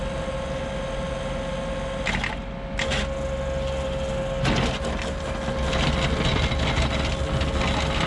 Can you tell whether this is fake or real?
real